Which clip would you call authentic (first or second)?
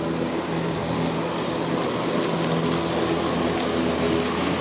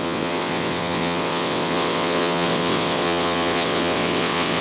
first